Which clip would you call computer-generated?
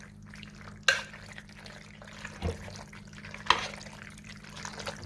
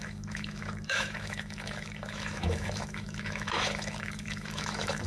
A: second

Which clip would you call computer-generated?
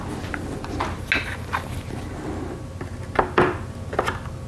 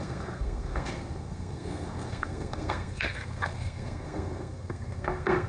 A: second